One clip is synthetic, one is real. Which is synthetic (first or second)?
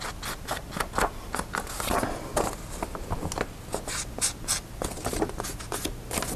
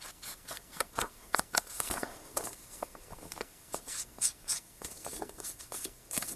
second